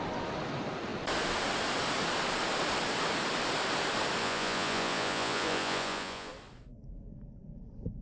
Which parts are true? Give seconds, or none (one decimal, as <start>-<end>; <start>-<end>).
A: 0.0-4.2; 6.3-8.0